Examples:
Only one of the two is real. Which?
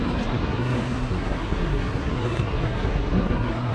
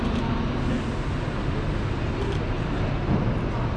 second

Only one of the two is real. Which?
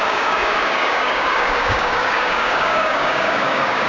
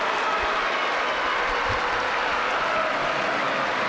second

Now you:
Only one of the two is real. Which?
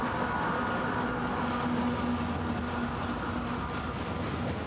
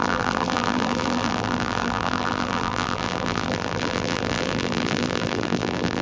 first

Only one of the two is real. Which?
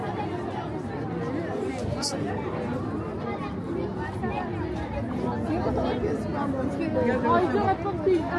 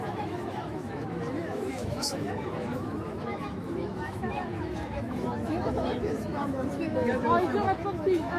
first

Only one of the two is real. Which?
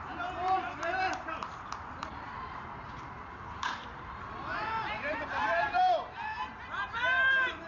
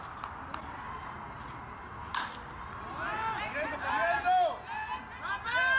second